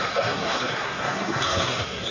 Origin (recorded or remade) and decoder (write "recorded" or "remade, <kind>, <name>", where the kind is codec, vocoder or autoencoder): remade, codec, SNAC